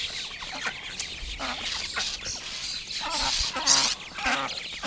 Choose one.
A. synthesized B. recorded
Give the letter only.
B